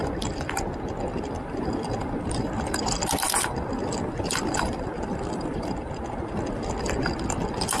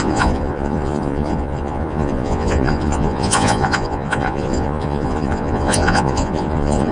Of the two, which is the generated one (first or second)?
second